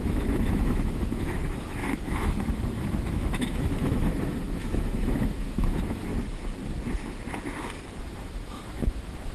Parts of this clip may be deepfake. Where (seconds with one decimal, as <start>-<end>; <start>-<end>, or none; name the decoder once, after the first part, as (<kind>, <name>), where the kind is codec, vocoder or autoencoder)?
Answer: 0.0-6.1 (autoencoder, DAC-VAE); 8.0-9.3